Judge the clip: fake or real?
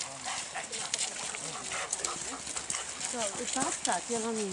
real